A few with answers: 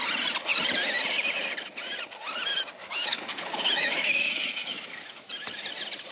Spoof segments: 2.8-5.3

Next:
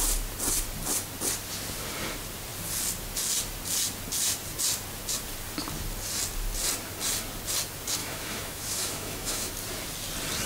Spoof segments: 8.0-9.5

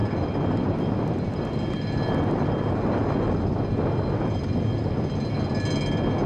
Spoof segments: none

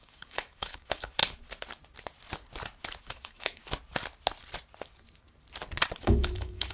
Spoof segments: 0.0-1.2; 3.0-3.6; 6.0-6.7